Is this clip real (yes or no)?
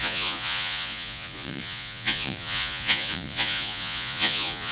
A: no